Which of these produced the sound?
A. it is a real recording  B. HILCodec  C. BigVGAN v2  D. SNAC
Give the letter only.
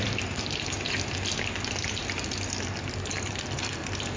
A